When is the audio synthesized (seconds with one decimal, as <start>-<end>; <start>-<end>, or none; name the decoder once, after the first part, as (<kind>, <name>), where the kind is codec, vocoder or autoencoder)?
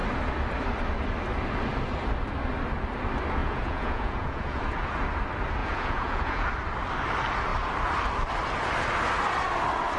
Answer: 3.4-4.6 (vocoder, Vocos); 5.6-6.5